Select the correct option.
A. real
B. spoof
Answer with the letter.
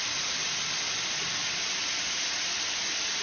A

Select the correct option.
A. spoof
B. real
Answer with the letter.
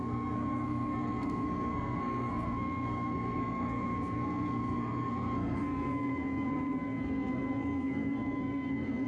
A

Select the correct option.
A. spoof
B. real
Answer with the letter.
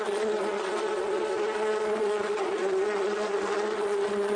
A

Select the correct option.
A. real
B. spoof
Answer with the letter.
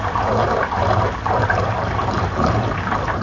B